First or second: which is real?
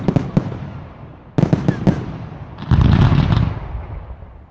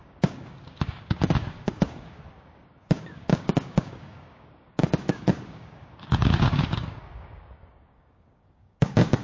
first